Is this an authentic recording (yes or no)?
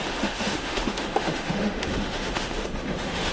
no